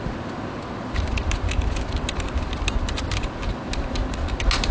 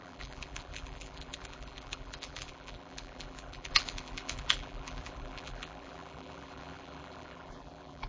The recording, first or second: first